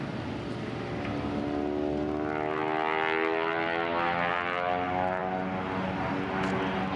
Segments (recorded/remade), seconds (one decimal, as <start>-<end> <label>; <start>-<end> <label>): 0.0-7.0 recorded